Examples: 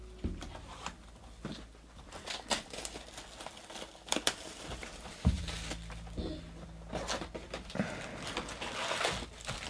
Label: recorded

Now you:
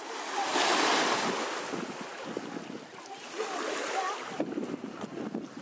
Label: recorded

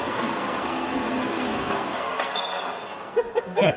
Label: remade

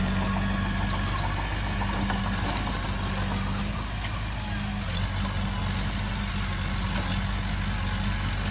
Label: recorded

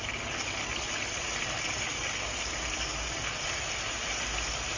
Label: recorded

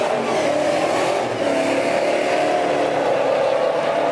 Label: recorded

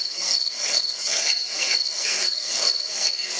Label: remade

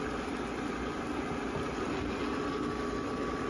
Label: recorded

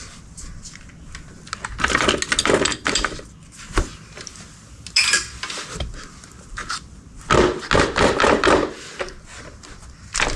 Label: recorded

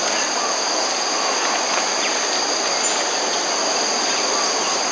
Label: recorded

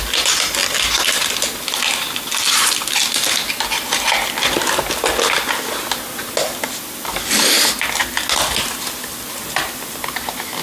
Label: recorded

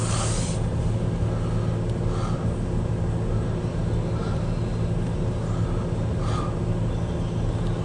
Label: recorded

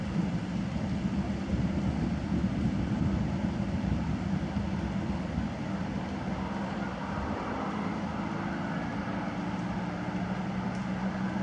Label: recorded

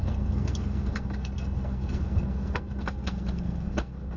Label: remade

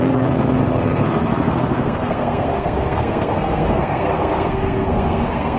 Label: remade